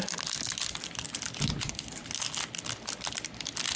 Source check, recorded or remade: recorded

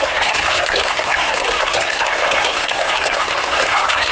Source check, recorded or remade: remade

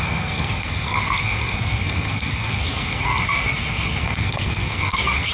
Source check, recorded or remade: remade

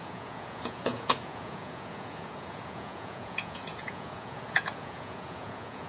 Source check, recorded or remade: remade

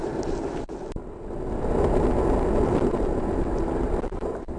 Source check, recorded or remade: recorded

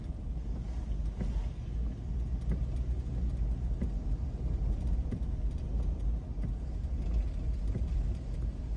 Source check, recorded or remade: recorded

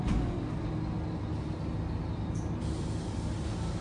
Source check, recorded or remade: recorded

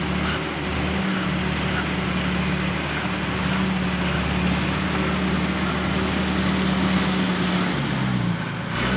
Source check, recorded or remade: recorded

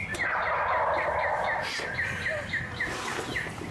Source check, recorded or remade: recorded